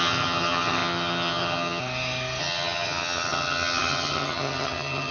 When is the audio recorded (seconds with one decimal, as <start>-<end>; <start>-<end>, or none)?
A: 1.8-2.4